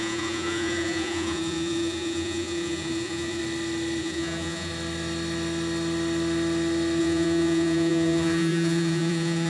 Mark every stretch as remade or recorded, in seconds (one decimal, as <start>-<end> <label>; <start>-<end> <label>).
0.0-3.4 remade; 3.4-4.0 recorded; 4.0-4.7 remade; 4.7-7.0 recorded; 7.0-9.5 remade